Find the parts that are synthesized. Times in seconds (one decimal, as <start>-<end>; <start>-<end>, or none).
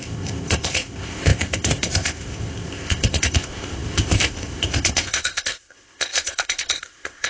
0.0-7.3